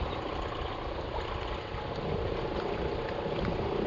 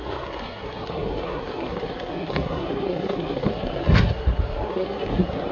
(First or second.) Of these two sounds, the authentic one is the first